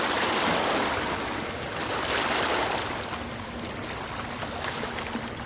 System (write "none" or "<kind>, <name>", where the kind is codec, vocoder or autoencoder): none